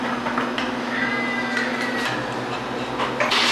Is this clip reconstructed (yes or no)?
no